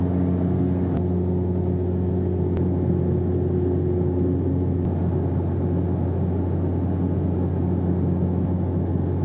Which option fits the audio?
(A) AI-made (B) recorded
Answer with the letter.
B